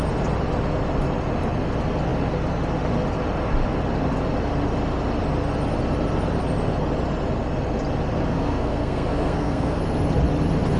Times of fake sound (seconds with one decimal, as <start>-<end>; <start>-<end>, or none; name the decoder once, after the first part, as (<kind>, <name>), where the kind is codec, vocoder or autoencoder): 8.3-9.8 (codec, SNAC)